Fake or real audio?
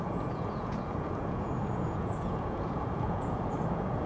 fake